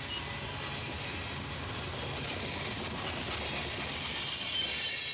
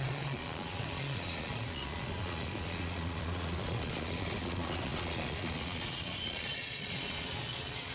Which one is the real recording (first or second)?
first